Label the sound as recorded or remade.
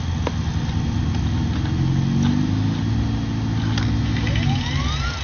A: recorded